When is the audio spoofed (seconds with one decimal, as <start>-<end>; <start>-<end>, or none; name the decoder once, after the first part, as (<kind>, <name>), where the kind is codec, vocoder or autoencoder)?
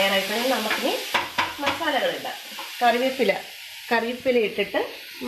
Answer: 1.5-4.7 (vocoder, BigVGAN v2)